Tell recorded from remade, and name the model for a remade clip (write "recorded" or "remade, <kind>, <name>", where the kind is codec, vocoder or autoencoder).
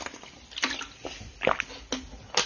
recorded